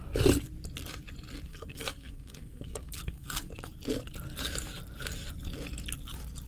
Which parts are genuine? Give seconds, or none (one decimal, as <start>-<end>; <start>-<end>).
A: 0.0-1.5; 3.5-6.5